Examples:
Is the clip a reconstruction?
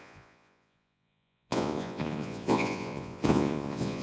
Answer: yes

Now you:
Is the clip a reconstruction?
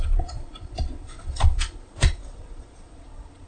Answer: yes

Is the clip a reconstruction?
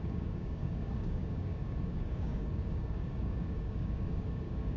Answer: yes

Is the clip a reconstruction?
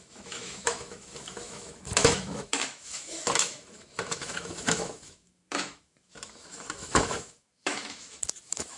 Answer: yes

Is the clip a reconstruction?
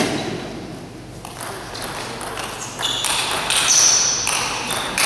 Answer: no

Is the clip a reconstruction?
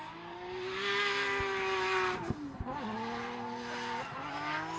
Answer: no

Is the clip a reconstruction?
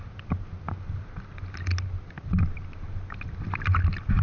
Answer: no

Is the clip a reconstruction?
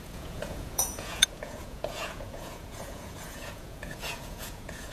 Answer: yes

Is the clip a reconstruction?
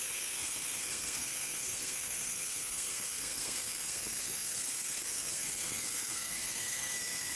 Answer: yes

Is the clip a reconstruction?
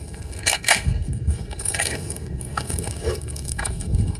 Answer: yes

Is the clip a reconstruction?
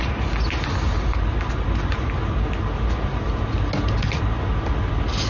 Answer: no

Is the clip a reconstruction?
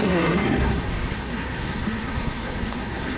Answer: yes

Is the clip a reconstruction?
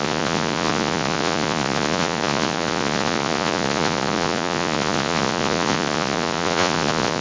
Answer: yes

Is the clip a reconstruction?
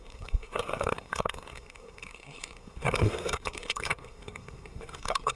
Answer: yes